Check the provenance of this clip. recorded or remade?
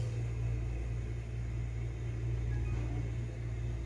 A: recorded